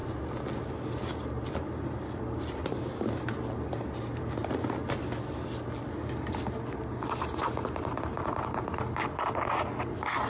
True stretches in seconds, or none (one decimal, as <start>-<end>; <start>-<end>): 0.0-10.3